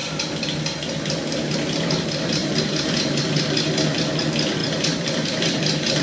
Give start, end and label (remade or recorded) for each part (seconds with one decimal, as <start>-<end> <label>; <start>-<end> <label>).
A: 0.0-2.4 recorded; 2.4-3.2 remade; 3.2-4.6 recorded; 4.6-6.0 remade